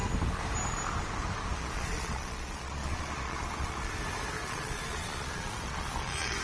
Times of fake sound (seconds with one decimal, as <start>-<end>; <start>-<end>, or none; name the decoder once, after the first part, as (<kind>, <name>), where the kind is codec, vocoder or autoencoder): 1.6-3.9 (vocoder, Vocos); 4.4-6.4